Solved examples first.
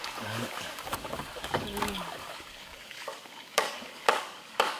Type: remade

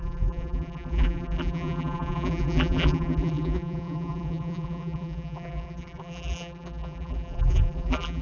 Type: remade